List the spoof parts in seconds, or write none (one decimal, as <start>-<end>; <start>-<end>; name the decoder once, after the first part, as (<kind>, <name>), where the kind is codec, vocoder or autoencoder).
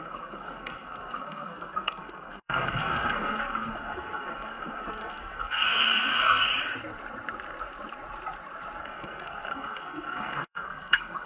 0.0-6.5 (codec, SNAC); 8.8-11.3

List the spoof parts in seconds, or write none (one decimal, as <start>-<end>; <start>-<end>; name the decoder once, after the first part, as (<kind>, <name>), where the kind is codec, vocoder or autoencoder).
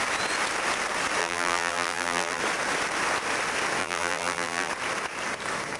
1.2-2.4 (vocoder, BigVGAN v2); 3.8-4.7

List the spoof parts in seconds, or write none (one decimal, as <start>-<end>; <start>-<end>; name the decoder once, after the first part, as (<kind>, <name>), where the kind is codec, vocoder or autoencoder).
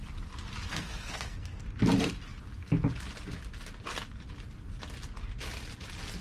0.7-1.6 (codec, SNAC)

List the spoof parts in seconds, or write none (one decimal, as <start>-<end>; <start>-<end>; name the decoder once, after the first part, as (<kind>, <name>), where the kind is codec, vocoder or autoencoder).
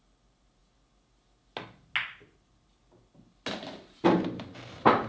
0.0-0.6 (vocoder, BigVGAN v2); 3.6-5.1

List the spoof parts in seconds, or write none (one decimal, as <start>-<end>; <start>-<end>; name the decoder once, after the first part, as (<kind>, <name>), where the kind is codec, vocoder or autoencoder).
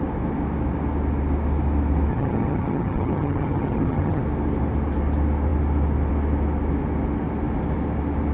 2.1-4.2 (vocoder, HiFi-GAN)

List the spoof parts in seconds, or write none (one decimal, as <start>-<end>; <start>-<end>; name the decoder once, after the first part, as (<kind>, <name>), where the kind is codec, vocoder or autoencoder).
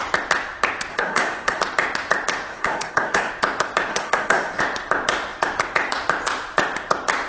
0.9-1.6 (codec, SNAC); 2.5-3.3; 3.9-4.6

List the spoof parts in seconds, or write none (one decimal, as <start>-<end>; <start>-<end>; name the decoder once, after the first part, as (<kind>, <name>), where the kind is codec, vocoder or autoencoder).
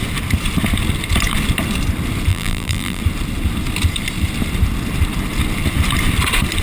2.3-3.0 (vocoder, BigVGAN v2)